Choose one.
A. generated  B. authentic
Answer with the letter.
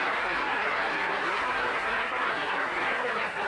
A